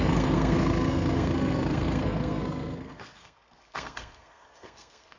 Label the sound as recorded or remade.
remade